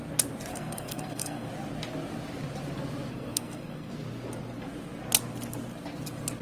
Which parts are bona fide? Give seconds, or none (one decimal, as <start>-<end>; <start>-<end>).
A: 0.0-0.5; 1.5-3.1; 3.9-6.4

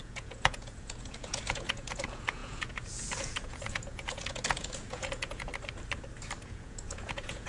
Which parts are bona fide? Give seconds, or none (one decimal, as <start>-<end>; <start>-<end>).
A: 5.5-6.4

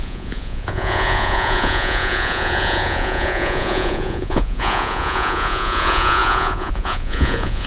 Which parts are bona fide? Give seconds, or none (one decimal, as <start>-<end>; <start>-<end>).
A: none

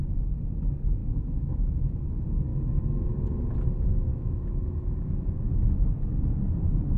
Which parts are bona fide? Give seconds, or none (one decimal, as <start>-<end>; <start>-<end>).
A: 0.0-1.0; 2.1-2.5; 3.1-4.1; 5.5-7.0

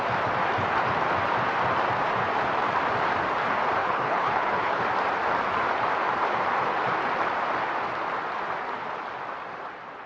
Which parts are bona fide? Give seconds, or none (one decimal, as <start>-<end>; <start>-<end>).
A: 0.0-3.8; 4.8-10.1